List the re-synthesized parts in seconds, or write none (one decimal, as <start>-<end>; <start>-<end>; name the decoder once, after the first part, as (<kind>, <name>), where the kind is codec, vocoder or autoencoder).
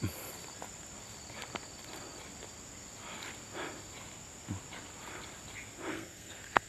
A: 5.9-6.7 (codec, SNAC)